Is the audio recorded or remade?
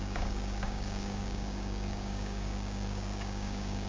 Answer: remade